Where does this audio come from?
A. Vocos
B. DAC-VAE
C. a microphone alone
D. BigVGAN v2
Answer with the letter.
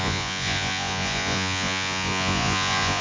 A